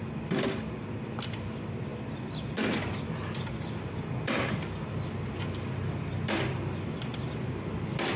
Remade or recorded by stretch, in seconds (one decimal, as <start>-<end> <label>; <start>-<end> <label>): 0.0-8.2 recorded